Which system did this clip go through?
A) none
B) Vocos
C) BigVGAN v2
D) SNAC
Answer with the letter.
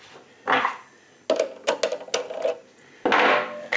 A